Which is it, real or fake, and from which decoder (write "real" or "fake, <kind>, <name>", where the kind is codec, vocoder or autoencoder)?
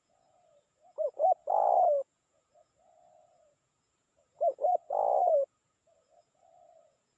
fake, vocoder, Vocos